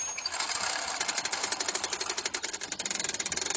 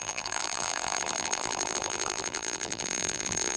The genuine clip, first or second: first